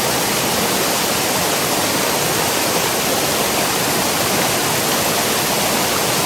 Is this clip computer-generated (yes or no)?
no